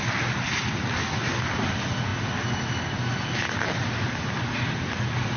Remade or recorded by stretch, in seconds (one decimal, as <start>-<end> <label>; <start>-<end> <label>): 0.0-5.4 recorded